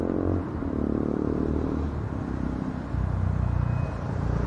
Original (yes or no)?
yes